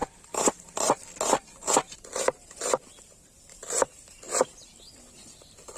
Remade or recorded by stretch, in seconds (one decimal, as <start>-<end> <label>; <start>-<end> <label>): 0.0-2.5 remade; 2.5-3.6 recorded; 3.6-4.3 remade; 4.3-5.8 recorded